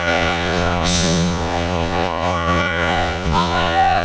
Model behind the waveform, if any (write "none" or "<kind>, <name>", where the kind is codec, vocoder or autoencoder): vocoder, Vocos